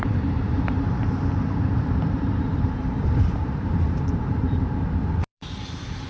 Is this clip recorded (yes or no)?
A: no